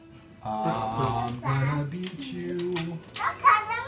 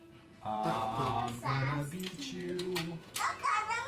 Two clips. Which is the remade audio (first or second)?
second